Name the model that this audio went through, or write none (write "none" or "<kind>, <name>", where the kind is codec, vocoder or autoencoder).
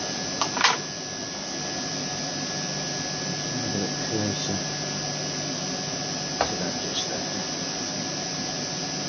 none